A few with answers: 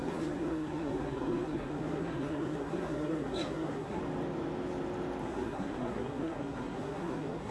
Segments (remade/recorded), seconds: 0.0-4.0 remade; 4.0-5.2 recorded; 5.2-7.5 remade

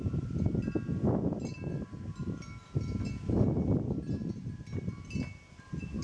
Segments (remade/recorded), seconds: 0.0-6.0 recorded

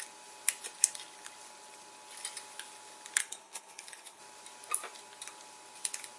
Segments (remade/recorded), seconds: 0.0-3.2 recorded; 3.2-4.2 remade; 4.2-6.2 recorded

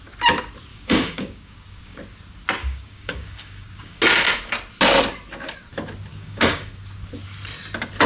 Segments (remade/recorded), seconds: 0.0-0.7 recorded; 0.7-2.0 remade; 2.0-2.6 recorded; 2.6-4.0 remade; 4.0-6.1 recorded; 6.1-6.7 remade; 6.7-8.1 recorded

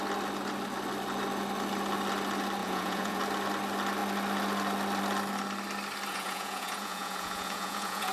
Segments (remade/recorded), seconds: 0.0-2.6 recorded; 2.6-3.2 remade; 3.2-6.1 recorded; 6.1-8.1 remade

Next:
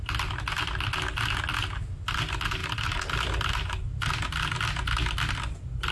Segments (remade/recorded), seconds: 0.0-5.9 recorded